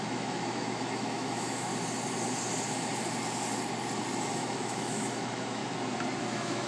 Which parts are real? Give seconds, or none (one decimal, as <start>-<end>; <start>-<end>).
1.7-4.3; 5.6-6.2